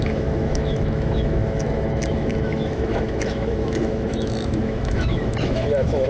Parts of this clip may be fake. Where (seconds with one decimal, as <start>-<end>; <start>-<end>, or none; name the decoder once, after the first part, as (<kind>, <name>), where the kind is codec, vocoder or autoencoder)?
0.0-6.1 (autoencoder, DAC-VAE)